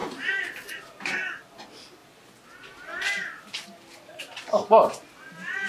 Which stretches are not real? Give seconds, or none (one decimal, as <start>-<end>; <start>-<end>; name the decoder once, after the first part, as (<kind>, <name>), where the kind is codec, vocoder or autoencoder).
none